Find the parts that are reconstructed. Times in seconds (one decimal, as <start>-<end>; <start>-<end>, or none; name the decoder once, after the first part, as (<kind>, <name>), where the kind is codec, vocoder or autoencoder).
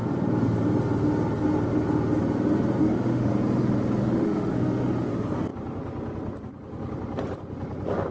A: 2.8-3.3 (autoencoder, DAC-VAE); 4.0-5.1